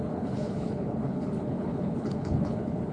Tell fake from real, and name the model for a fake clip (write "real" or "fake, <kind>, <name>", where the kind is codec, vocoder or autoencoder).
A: fake, codec, HILCodec